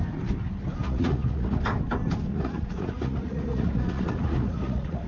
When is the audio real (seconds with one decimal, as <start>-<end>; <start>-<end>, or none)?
0.0-0.8; 1.6-2.3